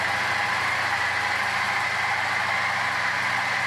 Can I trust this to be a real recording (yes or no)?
yes